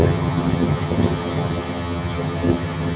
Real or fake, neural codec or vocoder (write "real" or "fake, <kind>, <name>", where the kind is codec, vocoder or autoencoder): fake, vocoder, HiFi-GAN